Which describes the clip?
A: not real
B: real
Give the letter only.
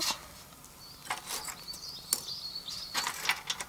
B